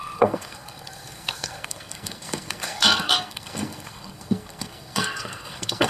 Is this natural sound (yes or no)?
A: no